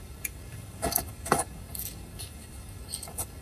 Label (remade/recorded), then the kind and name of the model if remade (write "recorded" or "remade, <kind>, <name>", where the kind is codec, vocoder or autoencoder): remade, codec, DAC